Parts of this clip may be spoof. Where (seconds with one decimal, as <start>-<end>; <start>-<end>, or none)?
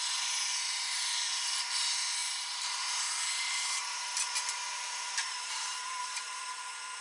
0.5-1.0; 2.2-6.4